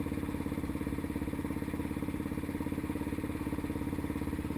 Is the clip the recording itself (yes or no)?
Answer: yes